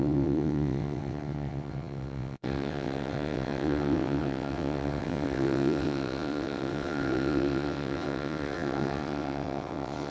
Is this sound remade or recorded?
remade